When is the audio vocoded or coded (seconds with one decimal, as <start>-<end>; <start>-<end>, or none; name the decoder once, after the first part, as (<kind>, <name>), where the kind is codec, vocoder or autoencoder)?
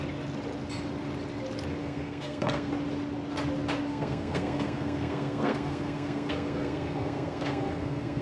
1.8-2.7 (codec, SNAC); 3.9-8.2